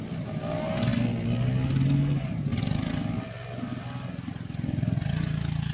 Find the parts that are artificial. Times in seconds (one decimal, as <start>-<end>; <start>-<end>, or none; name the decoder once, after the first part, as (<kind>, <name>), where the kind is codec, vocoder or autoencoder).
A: none